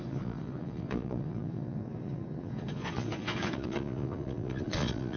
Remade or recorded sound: remade